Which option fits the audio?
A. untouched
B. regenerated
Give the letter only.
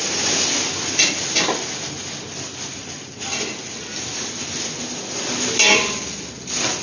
A